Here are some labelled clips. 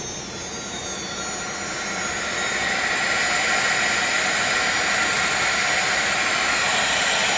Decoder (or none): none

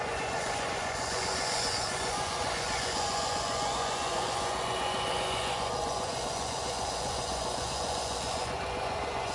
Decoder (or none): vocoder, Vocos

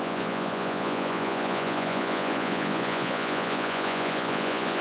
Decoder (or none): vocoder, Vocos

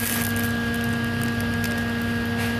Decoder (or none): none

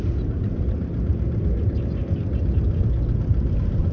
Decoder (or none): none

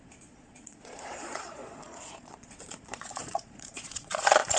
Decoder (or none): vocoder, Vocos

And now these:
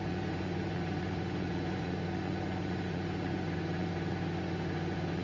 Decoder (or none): vocoder, Vocos